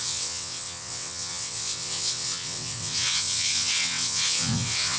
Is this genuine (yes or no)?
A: no